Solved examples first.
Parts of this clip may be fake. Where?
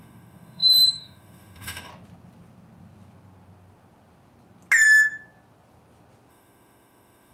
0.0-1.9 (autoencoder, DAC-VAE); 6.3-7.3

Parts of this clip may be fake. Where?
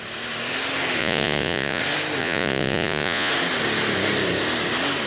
1.0-1.8 (vocoder, Vocos); 2.2-3.3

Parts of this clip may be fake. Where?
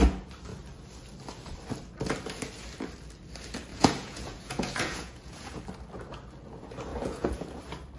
3.7-5.6 (vocoder, Vocos); 6.9-7.6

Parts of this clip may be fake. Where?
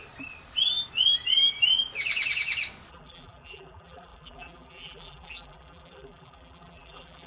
2.9-7.3 (vocoder, BigVGAN v2)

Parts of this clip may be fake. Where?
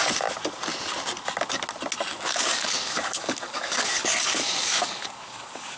2.1-5.8 (codec, DAC)